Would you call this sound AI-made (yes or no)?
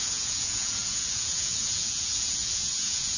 yes